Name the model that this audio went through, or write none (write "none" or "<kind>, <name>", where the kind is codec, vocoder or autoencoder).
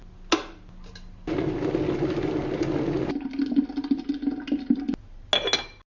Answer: none